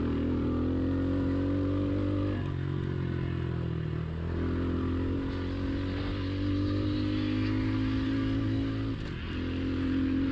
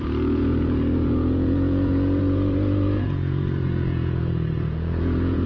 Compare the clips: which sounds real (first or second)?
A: first